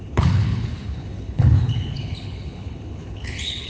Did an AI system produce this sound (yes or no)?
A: yes